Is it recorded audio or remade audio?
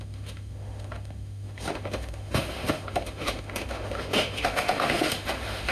remade